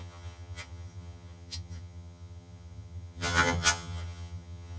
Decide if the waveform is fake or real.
fake